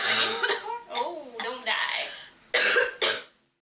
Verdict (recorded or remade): recorded